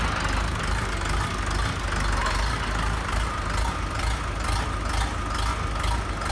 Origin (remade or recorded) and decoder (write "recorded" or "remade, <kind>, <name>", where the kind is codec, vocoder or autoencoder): recorded